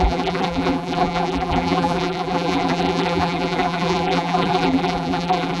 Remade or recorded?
remade